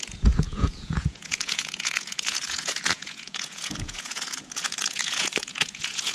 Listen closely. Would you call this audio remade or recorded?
remade